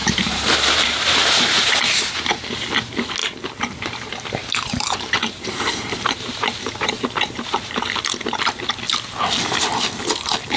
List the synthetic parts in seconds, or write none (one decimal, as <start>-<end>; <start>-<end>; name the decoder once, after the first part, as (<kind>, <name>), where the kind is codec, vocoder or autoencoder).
0.0-1.7 (vocoder, BigVGAN v2); 3.2-7.7